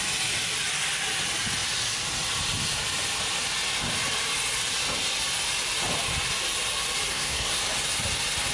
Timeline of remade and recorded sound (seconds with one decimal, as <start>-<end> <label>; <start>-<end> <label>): 0.0-7.1 recorded; 7.1-7.6 remade; 7.6-8.5 recorded